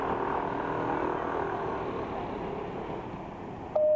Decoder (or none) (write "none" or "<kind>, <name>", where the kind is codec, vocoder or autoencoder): none